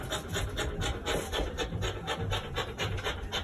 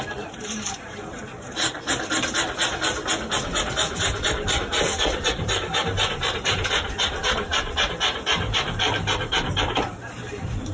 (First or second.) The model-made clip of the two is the second